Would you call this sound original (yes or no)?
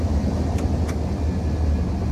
yes